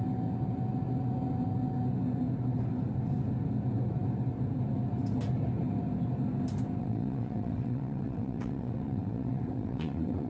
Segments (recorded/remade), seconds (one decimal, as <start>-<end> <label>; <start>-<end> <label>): 0.0-6.8 recorded; 6.8-10.3 remade